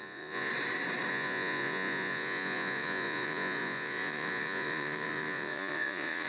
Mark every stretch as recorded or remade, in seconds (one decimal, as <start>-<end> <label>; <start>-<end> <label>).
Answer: 0.0-0.5 remade; 0.5-1.1 recorded; 1.1-6.3 remade